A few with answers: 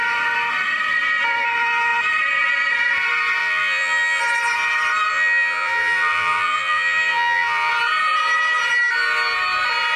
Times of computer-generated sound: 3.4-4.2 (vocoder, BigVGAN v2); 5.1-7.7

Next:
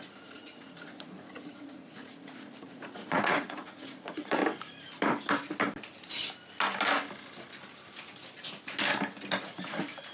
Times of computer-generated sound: 0.0-4.4 (vocoder, Vocos); 9.4-10.1

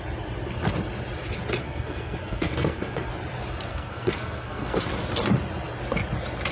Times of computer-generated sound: 1.6-3.1 (codec, SNAC); 3.7-4.8

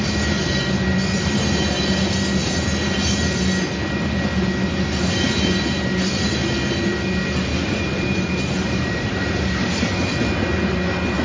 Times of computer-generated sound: 7.5-9.9 (vocoder, BigVGAN v2)

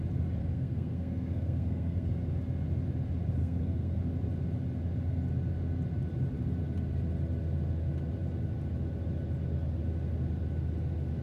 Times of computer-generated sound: 0.4-2.1 (codec, SNAC); 3.4-4.0

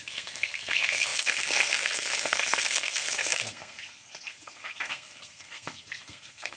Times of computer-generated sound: 0.0-6.6 (codec, SNAC)

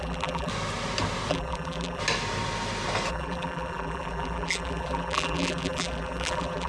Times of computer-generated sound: 0.0-0.5 (vocoder, BigVGAN v2); 1.3-2.0; 3.1-6.7

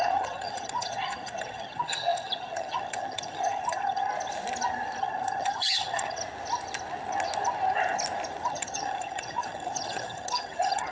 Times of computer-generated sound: 0.0-4.1 (vocoder, HiFi-GAN); 5.0-6.2; 8.5-10.9